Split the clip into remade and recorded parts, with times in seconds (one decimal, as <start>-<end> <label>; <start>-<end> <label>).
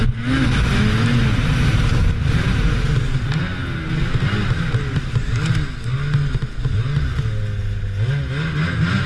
0.0-9.1 recorded